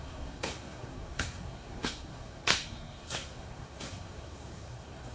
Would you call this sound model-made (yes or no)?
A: yes